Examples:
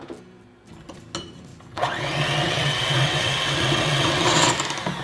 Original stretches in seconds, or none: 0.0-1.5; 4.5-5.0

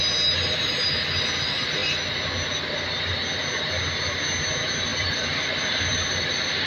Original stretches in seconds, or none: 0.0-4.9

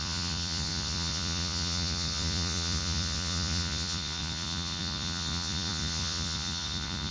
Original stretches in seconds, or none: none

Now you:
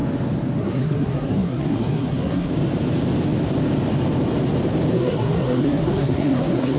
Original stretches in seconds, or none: 0.0-0.6; 2.5-4.9

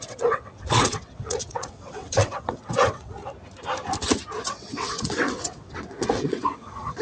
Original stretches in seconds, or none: 3.2-4.4